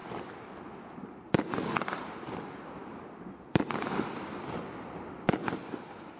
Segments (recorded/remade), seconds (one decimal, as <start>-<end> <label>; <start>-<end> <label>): 0.0-6.2 recorded